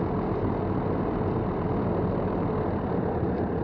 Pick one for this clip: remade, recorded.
recorded